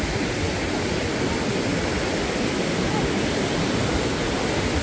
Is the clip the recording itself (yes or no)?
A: yes